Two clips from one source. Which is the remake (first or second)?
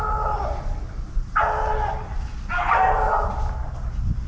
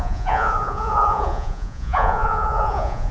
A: second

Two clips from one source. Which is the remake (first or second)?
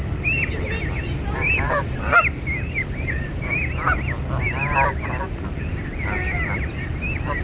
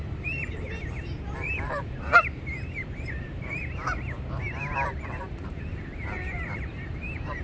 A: second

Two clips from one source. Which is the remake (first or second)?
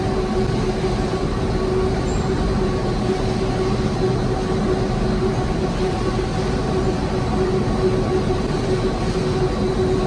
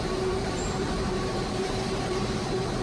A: second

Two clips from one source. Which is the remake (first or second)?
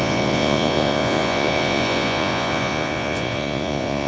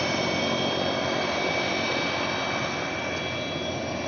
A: first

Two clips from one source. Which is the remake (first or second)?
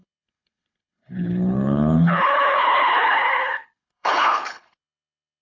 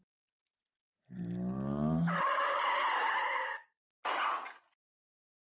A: first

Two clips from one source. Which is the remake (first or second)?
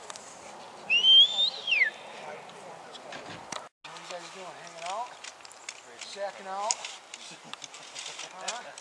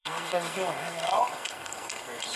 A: second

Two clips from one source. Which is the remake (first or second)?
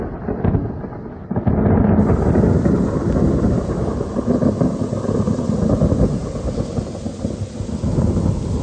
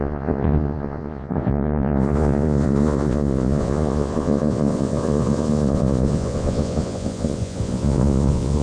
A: second